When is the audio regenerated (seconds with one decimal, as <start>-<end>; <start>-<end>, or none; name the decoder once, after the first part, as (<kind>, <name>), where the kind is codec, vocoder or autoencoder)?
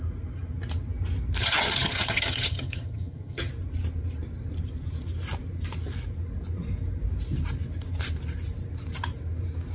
1.4-3.5 (vocoder, HiFi-GAN)